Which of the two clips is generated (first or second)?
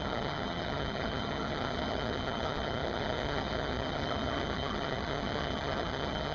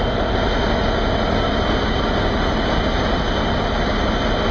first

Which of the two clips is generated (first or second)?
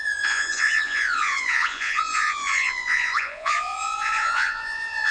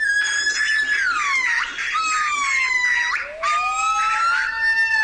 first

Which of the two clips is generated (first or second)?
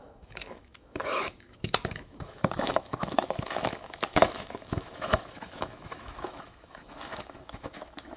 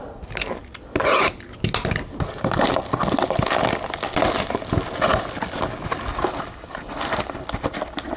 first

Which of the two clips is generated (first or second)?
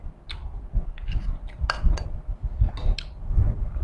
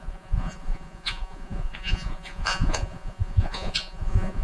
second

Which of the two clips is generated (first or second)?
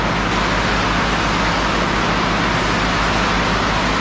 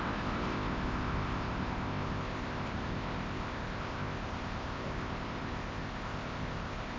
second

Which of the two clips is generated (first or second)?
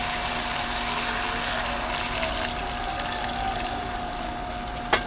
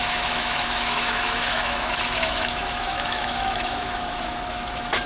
second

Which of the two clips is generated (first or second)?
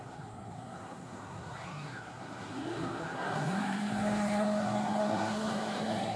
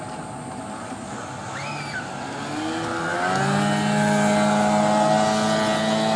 first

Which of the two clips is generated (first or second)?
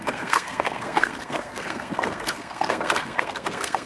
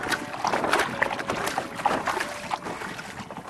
first